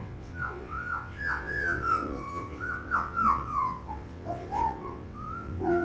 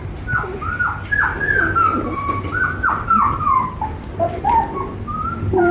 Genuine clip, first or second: second